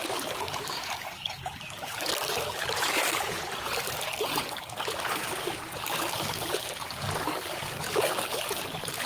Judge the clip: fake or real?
fake